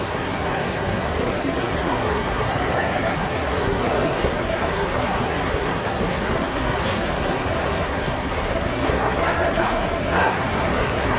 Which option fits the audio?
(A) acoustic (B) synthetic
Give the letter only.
B